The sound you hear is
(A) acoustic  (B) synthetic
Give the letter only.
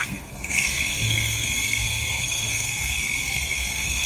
B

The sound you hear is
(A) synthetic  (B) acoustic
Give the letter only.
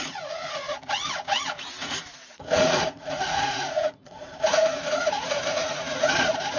A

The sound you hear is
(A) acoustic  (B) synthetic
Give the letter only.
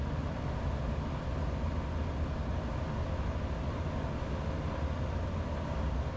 A